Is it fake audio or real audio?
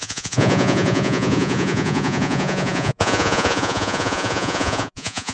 fake